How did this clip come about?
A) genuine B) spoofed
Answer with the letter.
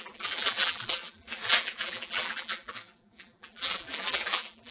B